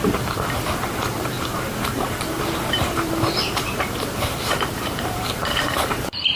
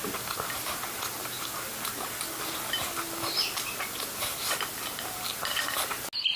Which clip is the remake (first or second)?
first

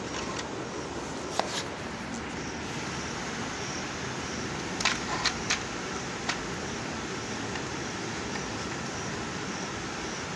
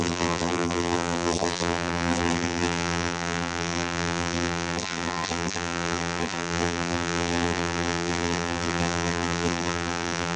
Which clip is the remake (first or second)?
second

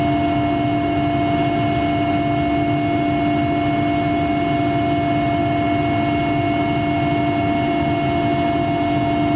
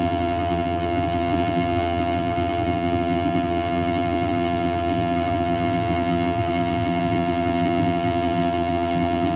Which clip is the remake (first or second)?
second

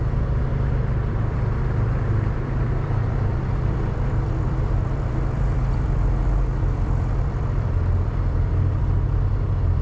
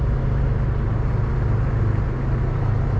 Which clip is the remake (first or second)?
first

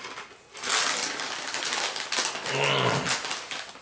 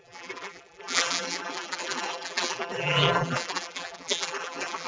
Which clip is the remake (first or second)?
second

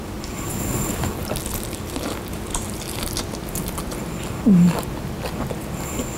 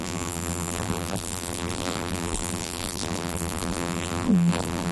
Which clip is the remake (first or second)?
second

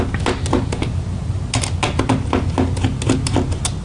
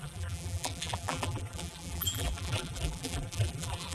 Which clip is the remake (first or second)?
second